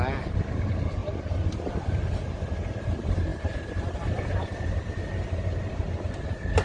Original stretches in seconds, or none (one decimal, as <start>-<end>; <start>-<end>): 0.0-6.6